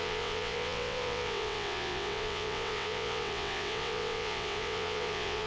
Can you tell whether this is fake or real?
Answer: fake